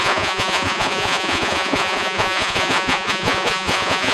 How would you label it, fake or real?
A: fake